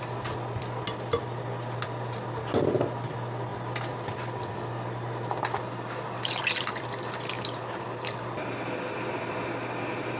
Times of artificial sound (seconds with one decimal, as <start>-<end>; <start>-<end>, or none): none